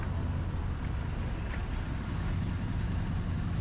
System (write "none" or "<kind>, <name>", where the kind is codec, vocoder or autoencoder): none